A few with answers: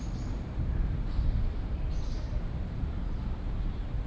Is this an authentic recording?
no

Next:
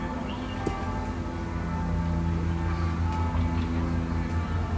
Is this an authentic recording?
yes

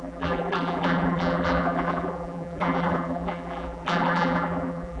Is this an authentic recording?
no